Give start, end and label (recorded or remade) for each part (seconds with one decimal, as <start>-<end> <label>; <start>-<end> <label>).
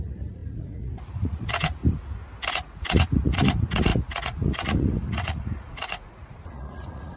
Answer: 0.0-1.8 remade; 1.8-2.5 recorded; 2.5-7.2 remade